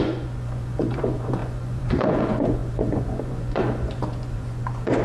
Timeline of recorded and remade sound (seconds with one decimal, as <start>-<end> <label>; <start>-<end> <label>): 0.0-5.0 remade